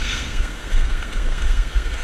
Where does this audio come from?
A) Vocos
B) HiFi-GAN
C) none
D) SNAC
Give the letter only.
D